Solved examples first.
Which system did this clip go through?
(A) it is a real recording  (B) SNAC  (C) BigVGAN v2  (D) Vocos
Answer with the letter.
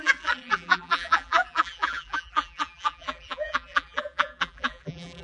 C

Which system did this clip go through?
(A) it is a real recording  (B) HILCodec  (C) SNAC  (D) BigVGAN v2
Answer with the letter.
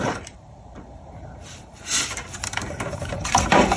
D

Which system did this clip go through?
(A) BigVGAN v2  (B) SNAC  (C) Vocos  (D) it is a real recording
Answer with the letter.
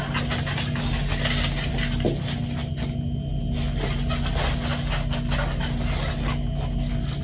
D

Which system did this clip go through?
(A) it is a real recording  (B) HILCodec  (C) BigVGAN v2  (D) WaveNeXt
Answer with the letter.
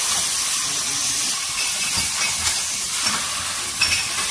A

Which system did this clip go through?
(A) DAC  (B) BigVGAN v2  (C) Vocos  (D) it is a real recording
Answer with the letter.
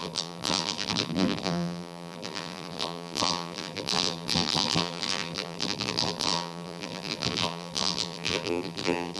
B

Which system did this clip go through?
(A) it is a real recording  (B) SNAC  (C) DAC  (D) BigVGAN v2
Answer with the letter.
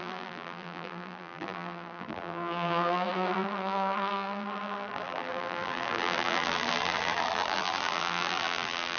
D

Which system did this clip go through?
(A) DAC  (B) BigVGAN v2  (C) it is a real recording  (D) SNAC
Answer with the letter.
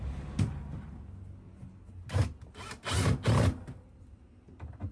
C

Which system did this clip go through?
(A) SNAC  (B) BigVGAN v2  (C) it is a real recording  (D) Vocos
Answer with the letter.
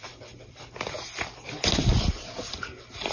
B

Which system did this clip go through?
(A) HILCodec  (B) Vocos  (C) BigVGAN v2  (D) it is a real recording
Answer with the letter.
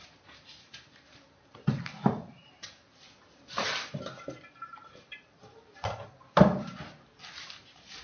C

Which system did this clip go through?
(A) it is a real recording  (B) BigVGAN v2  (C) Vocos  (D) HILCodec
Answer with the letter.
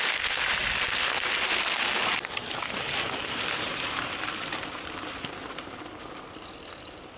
B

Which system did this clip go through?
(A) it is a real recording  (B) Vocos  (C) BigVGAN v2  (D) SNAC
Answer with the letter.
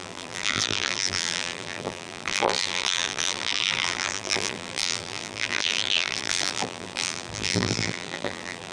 C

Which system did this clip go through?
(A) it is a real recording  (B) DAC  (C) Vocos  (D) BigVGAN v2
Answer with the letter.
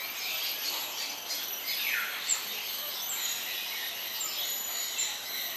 A